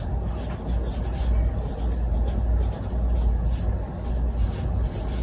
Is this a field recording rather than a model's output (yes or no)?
yes